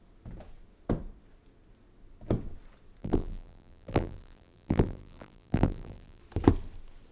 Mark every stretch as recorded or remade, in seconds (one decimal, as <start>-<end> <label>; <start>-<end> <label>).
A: 0.0-3.0 recorded; 3.0-6.2 remade; 6.2-7.1 recorded